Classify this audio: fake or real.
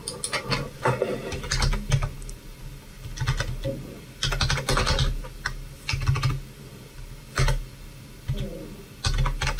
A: real